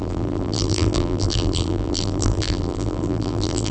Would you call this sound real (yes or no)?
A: no